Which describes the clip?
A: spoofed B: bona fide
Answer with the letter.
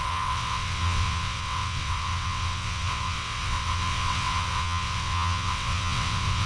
A